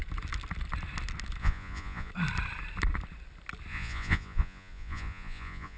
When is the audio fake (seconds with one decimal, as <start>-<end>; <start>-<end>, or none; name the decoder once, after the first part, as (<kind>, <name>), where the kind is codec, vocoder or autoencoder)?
1.4-2.1 (vocoder, Vocos); 3.7-5.8